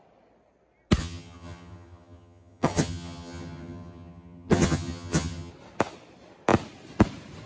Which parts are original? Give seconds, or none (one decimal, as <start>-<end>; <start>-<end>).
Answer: 0.0-1.0; 5.5-7.5